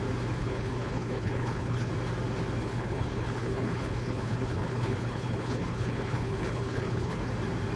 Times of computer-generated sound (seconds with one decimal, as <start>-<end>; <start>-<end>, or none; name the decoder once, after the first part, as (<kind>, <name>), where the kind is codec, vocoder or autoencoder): 0.4-1.9 (codec, HILCodec); 2.6-7.3